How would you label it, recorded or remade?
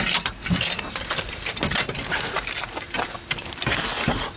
recorded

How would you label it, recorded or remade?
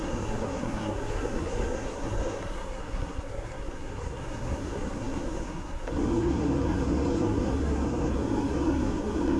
remade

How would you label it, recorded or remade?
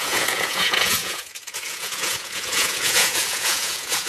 remade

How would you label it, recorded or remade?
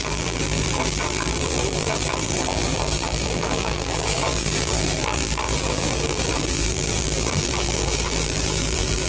remade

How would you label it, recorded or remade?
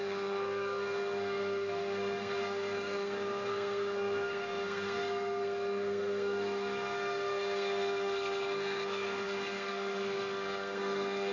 remade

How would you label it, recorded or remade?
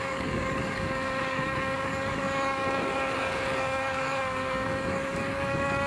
remade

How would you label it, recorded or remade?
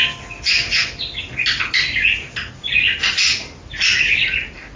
recorded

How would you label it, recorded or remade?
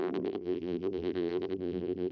remade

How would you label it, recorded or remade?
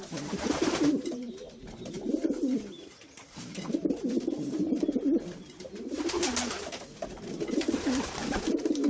remade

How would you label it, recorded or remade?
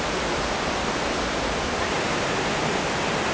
recorded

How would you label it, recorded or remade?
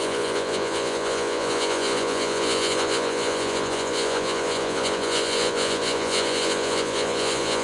remade